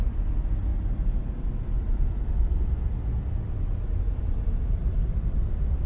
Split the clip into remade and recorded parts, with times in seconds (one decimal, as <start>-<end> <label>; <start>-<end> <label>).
0.0-5.9 recorded